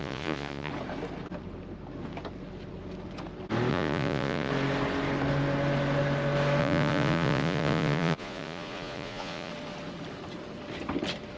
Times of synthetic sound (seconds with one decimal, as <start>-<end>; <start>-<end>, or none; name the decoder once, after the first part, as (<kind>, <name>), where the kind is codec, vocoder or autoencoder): 0.0-0.7 (vocoder, Vocos); 3.7-4.5; 6.6-9.5